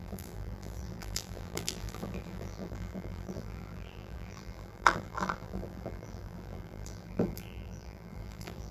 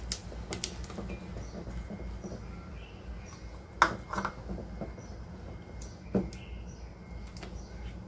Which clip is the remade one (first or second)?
first